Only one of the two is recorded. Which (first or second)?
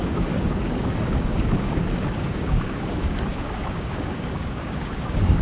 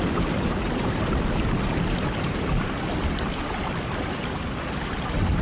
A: second